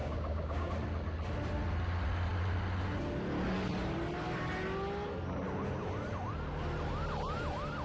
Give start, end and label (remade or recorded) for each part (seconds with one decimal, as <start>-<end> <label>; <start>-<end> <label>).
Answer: 0.0-0.7 remade; 0.7-7.8 recorded